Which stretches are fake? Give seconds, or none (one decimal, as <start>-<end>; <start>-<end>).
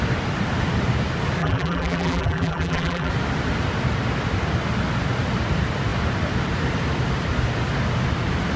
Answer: 1.4-3.1